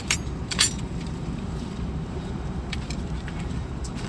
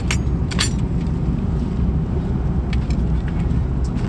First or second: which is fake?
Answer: first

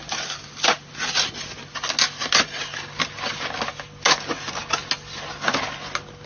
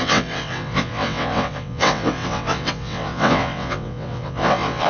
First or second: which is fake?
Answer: second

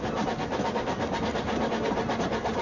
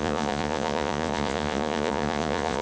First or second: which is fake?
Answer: second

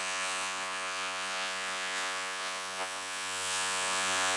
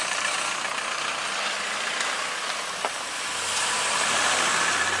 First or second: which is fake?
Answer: first